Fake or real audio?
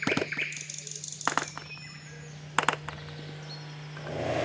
real